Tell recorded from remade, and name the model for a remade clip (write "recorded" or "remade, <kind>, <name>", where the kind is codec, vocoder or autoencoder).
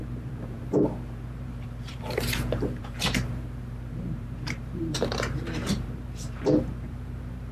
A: remade, vocoder, BigVGAN v2